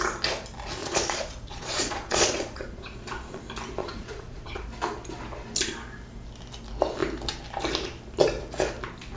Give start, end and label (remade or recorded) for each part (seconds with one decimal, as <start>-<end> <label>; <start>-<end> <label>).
0.0-0.8 recorded; 0.8-3.4 remade; 3.4-3.8 recorded; 3.8-4.6 remade; 4.6-9.2 recorded